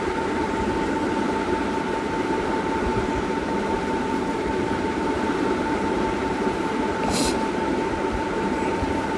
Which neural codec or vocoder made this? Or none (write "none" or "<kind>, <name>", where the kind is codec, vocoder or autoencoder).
vocoder, BigVGAN v2